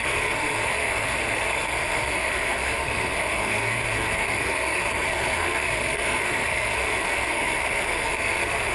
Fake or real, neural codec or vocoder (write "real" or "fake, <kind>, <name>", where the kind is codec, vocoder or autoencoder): fake, codec, SNAC